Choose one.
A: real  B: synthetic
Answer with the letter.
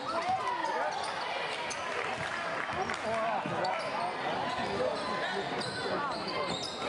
A